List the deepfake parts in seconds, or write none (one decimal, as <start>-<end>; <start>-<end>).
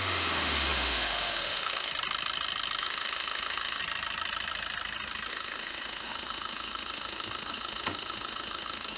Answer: 0.0-1.9; 2.8-3.8; 5.3-9.0